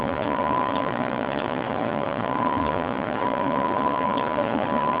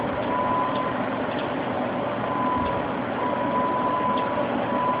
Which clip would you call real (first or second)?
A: second